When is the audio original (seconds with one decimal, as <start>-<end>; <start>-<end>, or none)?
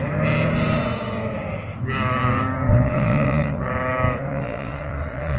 0.0-2.7; 3.7-4.3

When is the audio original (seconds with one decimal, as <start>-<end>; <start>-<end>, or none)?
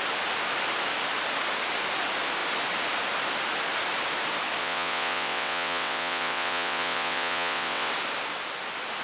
0.0-4.6; 7.9-9.0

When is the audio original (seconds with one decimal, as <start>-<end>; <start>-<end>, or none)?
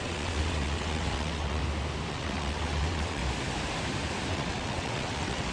1.6-2.1; 3.2-4.3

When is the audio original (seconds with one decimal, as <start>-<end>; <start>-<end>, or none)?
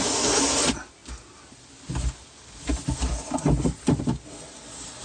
0.0-5.0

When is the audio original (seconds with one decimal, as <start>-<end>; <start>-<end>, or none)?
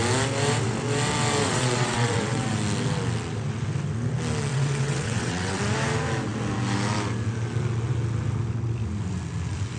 0.0-1.4; 2.5-4.5; 5.6-9.8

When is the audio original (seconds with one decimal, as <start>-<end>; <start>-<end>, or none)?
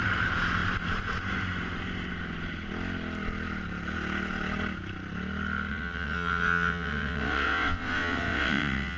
0.0-5.7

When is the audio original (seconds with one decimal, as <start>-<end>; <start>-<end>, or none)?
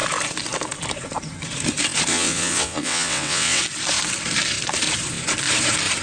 0.0-2.1; 3.6-6.0